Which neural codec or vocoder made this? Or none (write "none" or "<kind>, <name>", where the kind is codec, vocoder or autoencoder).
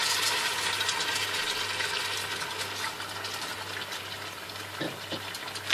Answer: none